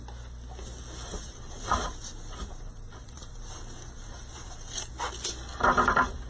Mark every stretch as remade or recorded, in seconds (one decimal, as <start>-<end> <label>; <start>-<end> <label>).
0.0-1.1 recorded; 1.1-4.9 remade; 4.9-6.3 recorded